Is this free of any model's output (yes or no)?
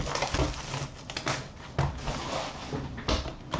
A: yes